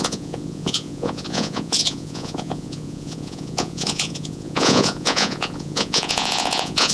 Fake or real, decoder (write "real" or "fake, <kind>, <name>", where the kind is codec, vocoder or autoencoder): fake, vocoder, Vocos